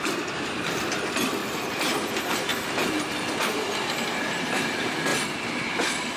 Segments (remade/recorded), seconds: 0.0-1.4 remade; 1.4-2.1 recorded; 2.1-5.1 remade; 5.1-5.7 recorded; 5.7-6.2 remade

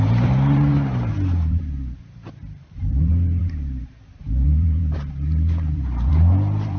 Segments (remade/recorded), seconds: 0.0-6.8 remade